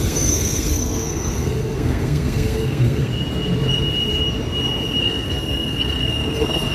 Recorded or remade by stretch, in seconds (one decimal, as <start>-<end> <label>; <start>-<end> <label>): 0.0-3.1 remade; 3.1-5.0 recorded; 5.0-6.7 remade